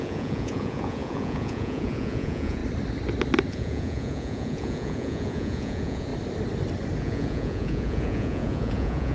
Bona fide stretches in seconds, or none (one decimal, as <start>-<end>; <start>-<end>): 2.6-3.5; 6.1-7.0